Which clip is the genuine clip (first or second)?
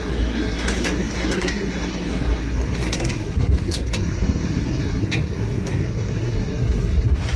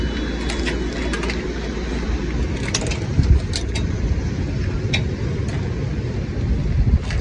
second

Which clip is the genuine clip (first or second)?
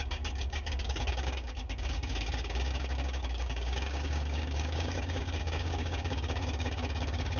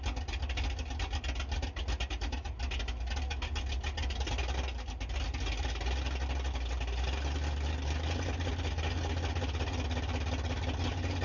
second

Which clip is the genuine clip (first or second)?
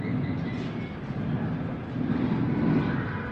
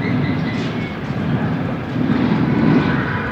first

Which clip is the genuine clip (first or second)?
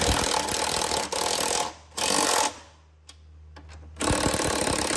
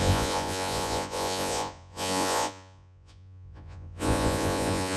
first